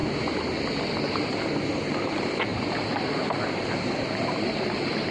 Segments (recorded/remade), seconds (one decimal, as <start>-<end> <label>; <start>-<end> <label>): 0.0-2.5 recorded; 2.5-5.1 remade